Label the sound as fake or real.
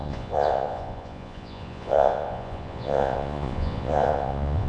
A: fake